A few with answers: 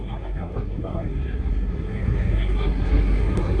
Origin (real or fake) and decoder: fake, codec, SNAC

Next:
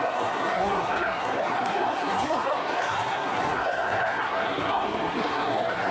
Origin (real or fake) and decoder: fake, codec, SNAC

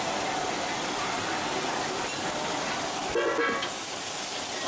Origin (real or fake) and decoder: real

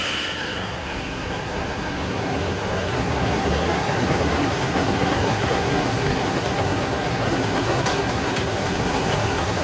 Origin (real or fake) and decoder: fake, codec, SNAC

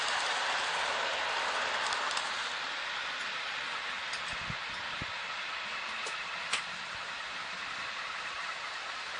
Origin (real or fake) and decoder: real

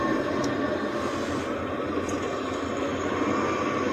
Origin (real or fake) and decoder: real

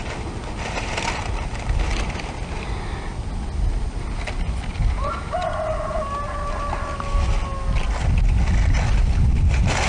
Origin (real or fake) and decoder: real